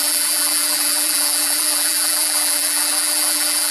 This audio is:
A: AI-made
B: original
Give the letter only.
A